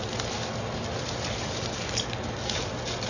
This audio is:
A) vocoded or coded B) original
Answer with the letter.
B